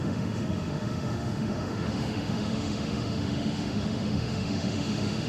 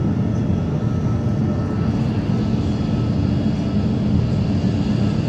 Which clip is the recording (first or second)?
second